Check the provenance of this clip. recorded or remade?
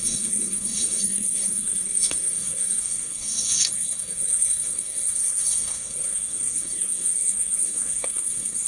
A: remade